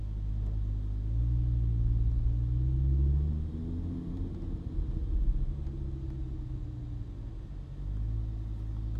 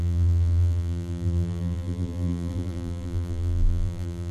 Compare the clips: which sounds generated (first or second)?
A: second